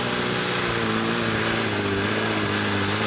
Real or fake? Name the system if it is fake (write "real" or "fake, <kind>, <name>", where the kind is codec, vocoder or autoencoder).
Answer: real